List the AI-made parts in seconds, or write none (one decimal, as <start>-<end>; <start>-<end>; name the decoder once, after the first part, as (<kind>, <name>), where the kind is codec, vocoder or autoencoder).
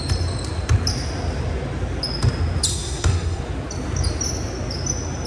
2.7-3.4 (codec, SNAC)